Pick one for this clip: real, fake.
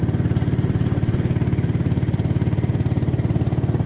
fake